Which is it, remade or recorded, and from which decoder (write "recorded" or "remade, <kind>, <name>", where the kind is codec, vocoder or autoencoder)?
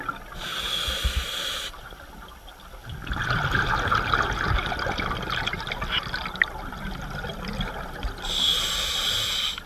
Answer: recorded